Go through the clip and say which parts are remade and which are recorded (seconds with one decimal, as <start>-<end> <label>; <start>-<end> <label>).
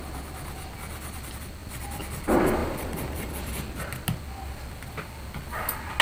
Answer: 0.0-2.6 recorded; 2.6-3.3 remade; 3.3-6.0 recorded